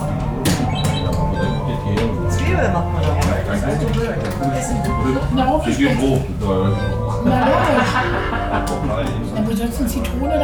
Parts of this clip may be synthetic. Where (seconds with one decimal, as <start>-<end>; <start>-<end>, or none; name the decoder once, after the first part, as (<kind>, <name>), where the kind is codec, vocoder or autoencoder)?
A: 4.7-6.9 (codec, DAC)